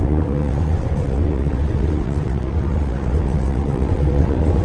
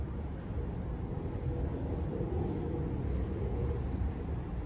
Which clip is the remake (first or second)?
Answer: first